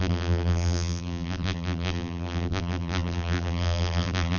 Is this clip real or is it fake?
fake